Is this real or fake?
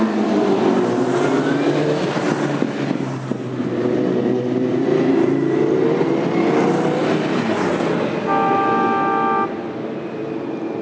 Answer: real